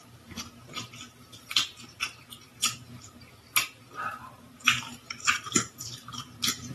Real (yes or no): no